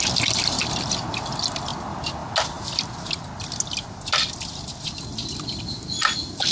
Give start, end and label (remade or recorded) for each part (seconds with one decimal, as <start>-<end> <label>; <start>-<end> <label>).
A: 0.0-6.5 recorded